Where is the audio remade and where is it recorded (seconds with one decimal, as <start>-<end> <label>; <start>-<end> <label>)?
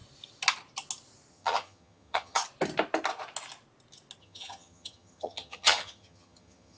0.0-1.3 recorded; 1.3-2.4 remade; 2.4-4.2 recorded; 4.2-6.8 remade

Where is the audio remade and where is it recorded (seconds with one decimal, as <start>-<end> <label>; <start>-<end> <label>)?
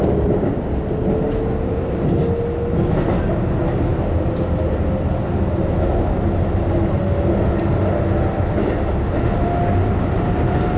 0.0-10.8 recorded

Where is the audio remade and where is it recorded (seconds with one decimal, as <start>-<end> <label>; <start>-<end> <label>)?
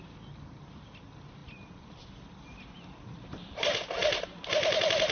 0.0-5.1 recorded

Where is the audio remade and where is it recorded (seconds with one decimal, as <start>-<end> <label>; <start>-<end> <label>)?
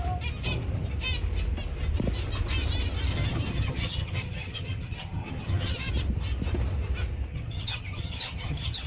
0.0-3.1 recorded; 3.1-5.9 remade; 5.9-7.3 recorded; 7.3-8.9 remade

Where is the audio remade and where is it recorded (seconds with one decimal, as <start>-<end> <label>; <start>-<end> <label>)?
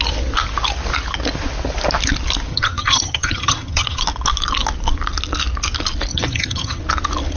0.0-2.5 recorded; 2.5-4.0 remade; 4.0-6.1 recorded; 6.1-6.8 remade; 6.8-7.4 recorded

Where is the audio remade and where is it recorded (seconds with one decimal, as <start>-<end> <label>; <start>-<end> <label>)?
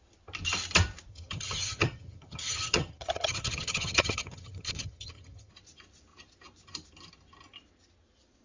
0.0-1.1 recorded; 1.1-5.5 remade; 5.5-8.4 recorded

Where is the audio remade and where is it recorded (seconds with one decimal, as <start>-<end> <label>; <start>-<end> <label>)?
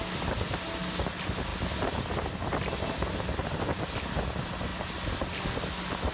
0.0-6.1 recorded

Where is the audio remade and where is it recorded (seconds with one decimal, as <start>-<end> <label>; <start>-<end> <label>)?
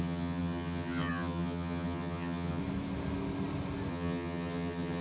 0.0-2.6 remade; 2.6-3.9 recorded; 3.9-5.0 remade